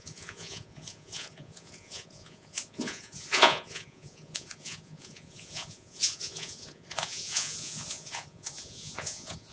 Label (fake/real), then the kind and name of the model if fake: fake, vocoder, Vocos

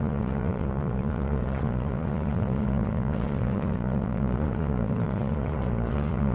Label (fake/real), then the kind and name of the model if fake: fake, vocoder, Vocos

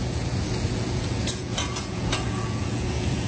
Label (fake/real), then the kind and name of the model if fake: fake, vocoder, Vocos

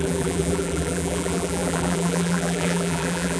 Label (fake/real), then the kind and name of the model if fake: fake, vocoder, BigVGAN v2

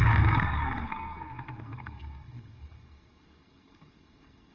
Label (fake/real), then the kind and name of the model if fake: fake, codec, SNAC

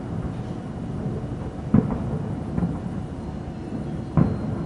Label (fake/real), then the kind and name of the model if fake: real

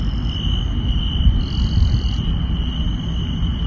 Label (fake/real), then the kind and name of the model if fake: real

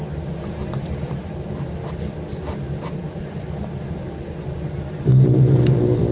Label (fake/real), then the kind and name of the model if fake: real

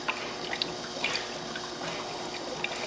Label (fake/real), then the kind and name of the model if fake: real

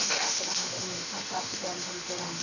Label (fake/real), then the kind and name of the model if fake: fake, autoencoder, DAC-VAE